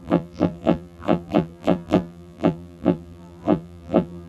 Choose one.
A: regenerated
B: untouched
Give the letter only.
A